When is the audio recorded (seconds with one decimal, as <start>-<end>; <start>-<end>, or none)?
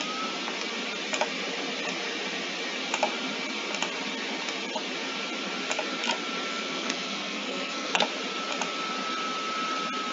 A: 0.0-6.5; 8.0-10.1